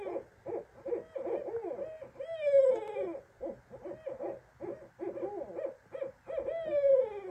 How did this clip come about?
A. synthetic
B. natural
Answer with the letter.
B